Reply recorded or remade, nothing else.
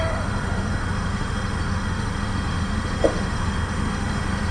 remade